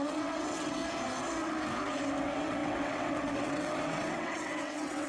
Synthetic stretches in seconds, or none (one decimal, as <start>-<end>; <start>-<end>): 0.0-0.8; 2.2-5.1